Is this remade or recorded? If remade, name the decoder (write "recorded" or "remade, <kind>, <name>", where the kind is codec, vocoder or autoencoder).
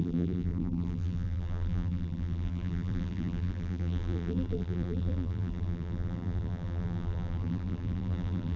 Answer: remade, vocoder, BigVGAN v2